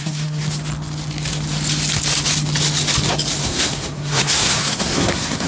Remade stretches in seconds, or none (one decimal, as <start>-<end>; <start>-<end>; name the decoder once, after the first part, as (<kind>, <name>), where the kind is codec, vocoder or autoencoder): 0.0-0.4 (codec, SNAC); 3.4-5.5